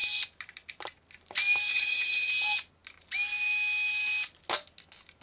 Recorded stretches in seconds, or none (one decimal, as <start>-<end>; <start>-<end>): 0.0-1.7; 2.3-5.2